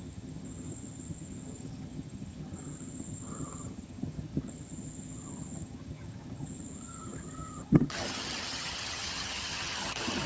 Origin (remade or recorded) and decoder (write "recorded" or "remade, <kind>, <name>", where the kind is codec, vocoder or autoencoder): remade, vocoder, HiFi-GAN